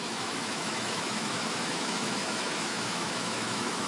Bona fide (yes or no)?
no